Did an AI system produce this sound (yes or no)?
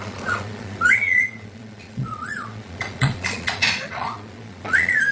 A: yes